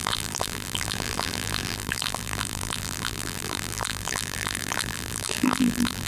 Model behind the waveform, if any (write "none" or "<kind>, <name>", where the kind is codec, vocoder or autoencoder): vocoder, BigVGAN v2